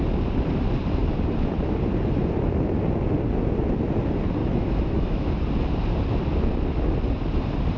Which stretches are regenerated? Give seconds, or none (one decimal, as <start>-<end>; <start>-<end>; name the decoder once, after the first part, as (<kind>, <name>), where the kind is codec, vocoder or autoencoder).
4.4-5.3 (autoencoder, DAC-VAE)

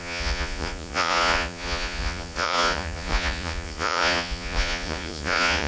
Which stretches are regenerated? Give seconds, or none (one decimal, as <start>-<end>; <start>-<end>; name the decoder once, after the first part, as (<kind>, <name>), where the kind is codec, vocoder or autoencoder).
0.0-5.7 (vocoder, Vocos)

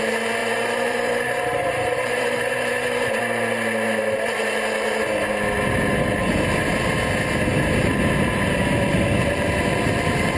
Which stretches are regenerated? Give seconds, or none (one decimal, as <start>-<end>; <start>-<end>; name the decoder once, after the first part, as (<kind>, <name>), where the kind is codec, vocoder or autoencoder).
0.4-3.2 (vocoder, BigVGAN v2)

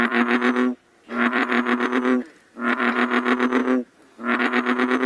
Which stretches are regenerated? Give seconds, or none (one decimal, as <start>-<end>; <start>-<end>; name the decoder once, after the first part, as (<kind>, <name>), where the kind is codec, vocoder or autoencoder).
0.8-2.9 (vocoder, BigVGAN v2)

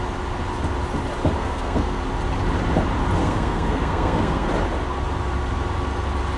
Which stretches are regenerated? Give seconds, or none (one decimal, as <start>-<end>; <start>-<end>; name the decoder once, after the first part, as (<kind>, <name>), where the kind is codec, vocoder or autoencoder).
1.4-2.0 (codec, SNAC); 3.2-4.5

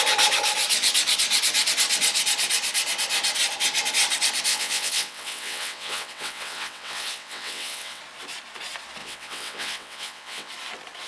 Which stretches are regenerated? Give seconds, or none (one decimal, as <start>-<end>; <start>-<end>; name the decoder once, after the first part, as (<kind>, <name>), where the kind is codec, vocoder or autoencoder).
4.5-8.0 (vocoder, WaveNeXt); 9.0-10.5

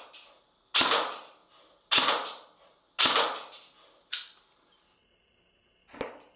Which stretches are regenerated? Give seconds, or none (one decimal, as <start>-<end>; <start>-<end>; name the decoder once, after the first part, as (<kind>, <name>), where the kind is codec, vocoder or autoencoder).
none